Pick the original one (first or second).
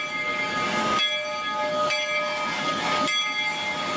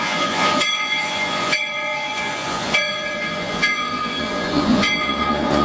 first